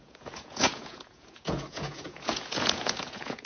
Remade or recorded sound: remade